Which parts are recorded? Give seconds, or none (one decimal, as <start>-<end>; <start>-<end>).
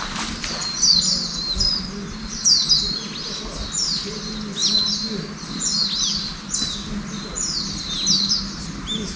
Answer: 0.0-9.2